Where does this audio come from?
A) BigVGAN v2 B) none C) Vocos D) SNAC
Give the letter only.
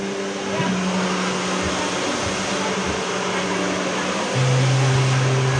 B